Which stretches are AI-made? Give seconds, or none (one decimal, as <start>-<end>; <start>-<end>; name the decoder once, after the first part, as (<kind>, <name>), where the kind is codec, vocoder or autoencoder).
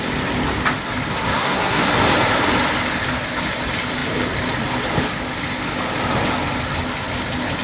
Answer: 1.1-1.8 (codec, SNAC)